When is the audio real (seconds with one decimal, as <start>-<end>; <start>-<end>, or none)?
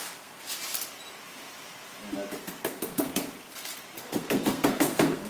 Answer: 0.4-2.4; 3.3-4.0